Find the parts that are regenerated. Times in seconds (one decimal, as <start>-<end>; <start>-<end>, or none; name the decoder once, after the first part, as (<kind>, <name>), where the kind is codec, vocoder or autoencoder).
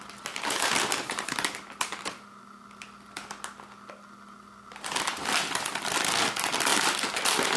none